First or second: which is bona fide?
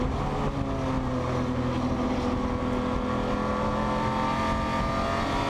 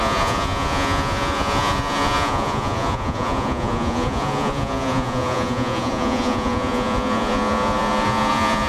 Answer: first